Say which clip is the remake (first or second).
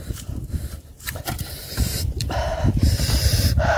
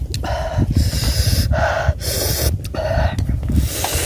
first